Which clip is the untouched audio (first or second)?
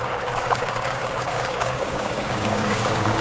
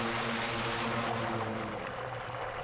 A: second